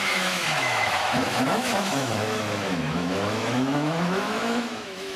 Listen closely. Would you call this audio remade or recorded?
remade